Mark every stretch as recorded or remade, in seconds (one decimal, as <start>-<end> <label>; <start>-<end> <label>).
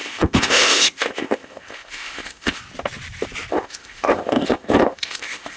0.0-2.6 remade; 2.6-3.5 recorded; 3.5-5.6 remade